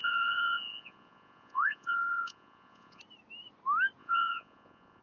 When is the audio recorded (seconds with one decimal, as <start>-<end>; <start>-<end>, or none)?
3.0-4.0